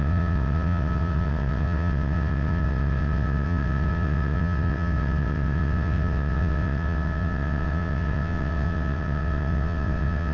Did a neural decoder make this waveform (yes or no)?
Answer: yes